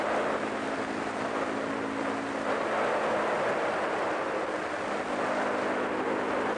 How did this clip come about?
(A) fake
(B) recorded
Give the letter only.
B